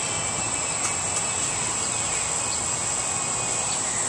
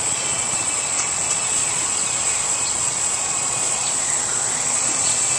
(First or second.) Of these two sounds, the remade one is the second